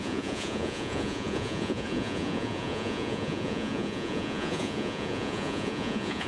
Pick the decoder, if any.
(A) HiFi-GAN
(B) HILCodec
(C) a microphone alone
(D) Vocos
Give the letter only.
D